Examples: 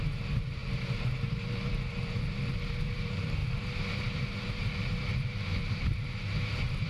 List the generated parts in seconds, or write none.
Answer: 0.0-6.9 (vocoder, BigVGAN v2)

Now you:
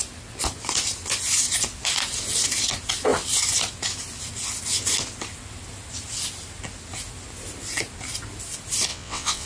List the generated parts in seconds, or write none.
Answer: 8.9-9.5 (vocoder, WaveNeXt)